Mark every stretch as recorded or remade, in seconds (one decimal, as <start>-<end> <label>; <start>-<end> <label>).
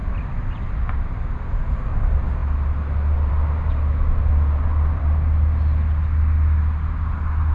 0.0-7.5 recorded